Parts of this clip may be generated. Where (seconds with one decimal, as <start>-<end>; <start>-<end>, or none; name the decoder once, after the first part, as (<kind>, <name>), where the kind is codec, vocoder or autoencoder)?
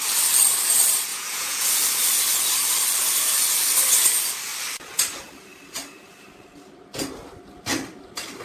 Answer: 1.1-1.7 (vocoder, Vocos)